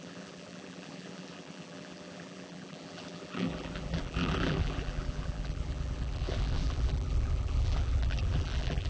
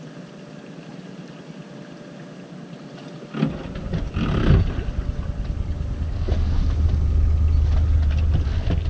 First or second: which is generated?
first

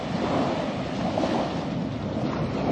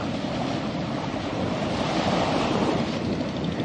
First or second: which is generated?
second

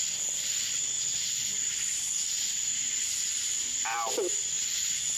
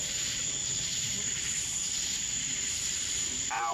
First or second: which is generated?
second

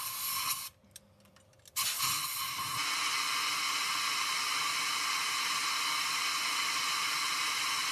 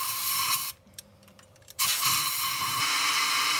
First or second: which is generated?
second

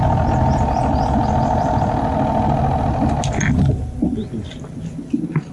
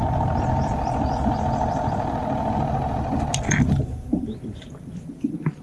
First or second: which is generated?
second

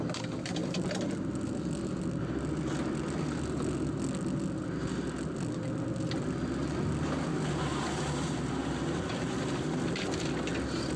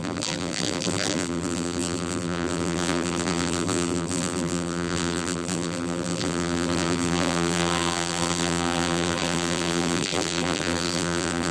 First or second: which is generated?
second